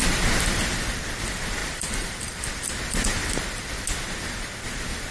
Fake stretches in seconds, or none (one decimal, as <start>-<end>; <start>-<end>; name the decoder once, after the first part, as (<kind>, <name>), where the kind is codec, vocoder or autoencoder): 1.6-2.4 (vocoder, BigVGAN v2)